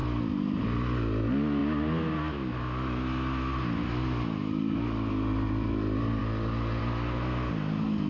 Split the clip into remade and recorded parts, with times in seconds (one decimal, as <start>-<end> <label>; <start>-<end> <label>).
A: 0.0-8.1 recorded